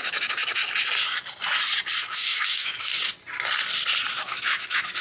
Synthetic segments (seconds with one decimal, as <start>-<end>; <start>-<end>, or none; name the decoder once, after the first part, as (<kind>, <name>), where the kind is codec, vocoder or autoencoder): 0.0-0.6 (autoencoder, DAC-VAE); 2.0-2.9; 4.1-5.0